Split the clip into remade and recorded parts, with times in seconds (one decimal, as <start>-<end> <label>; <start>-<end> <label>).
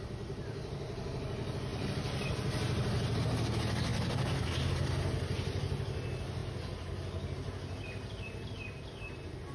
0.0-1.7 recorded; 1.7-2.4 remade; 2.4-9.5 recorded